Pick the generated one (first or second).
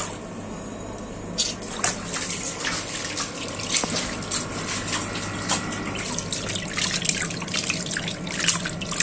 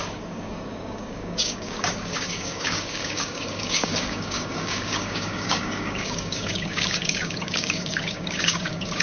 second